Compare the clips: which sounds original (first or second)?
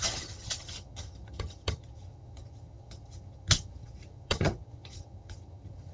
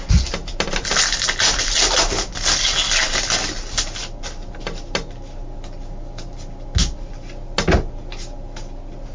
second